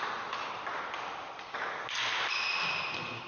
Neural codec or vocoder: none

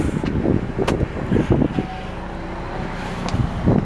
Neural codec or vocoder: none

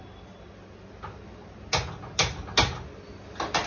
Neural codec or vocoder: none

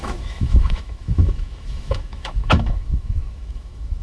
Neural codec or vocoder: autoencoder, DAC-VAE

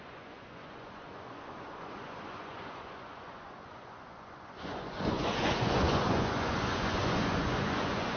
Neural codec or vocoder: vocoder, Vocos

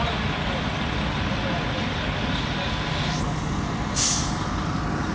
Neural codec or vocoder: none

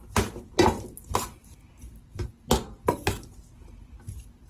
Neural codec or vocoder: none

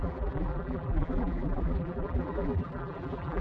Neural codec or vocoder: vocoder, BigVGAN v2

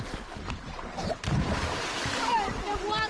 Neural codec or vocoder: vocoder, BigVGAN v2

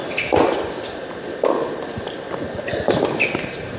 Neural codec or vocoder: none